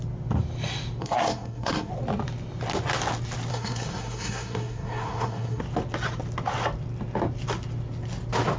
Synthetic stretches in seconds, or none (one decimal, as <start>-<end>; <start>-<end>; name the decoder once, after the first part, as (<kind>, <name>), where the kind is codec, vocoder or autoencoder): 1.0-1.9 (codec, SNAC); 3.5-5.6